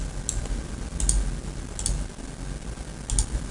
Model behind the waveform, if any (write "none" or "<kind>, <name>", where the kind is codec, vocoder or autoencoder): none